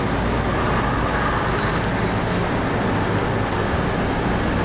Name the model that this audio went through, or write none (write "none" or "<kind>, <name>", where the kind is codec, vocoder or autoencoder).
none